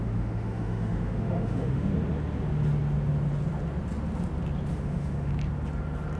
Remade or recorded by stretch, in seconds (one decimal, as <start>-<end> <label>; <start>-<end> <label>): 0.0-1.9 remade; 1.9-4.7 recorded; 4.7-5.3 remade; 5.3-6.2 recorded